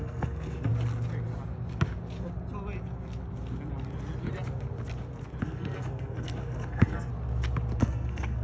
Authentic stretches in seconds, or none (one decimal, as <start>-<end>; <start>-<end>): 0.7-5.4; 7.1-7.8